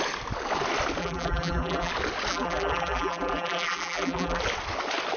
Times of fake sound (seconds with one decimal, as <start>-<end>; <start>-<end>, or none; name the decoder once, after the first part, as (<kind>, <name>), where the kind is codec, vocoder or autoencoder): 1.0-1.9 (vocoder, BigVGAN v2); 2.3-4.4